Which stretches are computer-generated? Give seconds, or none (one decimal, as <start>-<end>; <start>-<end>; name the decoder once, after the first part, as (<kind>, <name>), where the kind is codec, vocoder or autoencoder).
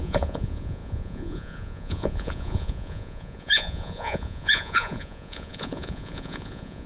0.0-6.9 (vocoder, Vocos)